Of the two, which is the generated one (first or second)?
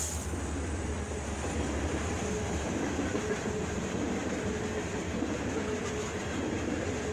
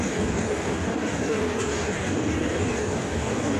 second